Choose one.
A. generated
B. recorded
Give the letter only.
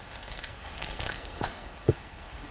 A